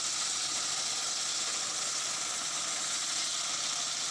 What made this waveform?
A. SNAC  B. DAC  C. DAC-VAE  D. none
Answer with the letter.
D